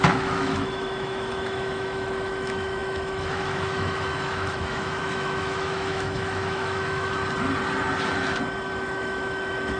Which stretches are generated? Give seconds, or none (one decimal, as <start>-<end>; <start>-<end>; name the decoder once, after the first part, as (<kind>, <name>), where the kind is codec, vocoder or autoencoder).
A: 0.0-7.2 (autoencoder, DAC-VAE); 8.8-9.8